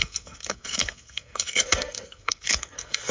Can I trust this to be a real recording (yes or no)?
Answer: no